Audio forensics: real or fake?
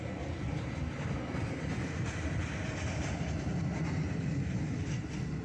real